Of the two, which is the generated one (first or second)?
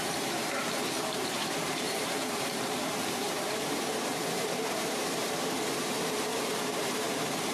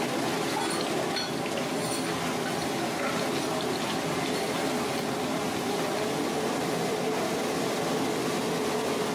first